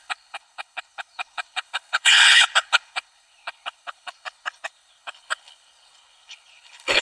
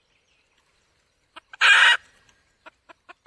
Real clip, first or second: second